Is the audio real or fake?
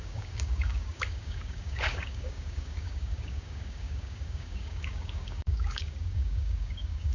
fake